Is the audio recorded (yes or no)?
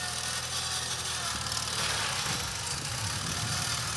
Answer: yes